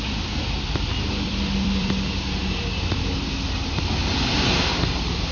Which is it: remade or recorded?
remade